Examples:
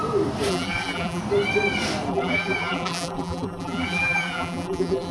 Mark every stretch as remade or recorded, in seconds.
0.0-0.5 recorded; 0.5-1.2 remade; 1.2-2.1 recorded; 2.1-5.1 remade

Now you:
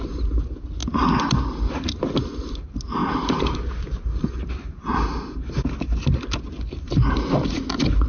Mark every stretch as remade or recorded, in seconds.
0.0-0.8 recorded; 0.8-2.0 remade; 2.0-3.0 recorded; 3.0-5.7 remade; 5.7-8.1 recorded

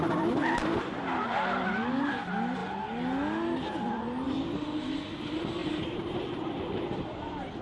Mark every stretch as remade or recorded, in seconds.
0.0-5.6 recorded; 5.6-6.5 remade; 6.5-7.6 recorded

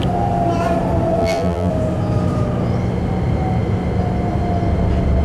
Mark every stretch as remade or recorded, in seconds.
0.0-1.2 recorded; 1.2-1.7 remade; 1.7-5.2 recorded

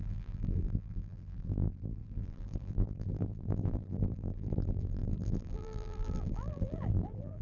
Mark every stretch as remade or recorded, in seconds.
0.0-7.4 remade

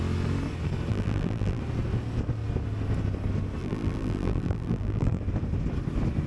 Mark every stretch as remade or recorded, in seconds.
0.0-0.9 recorded; 0.9-1.6 remade; 1.6-3.6 recorded; 3.6-5.2 remade; 5.2-6.3 recorded